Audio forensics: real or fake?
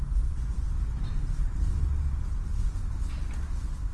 real